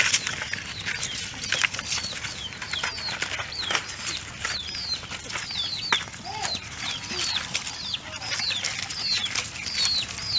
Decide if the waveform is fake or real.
real